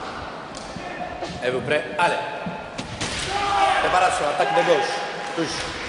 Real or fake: fake